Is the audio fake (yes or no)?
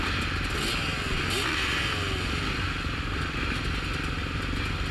no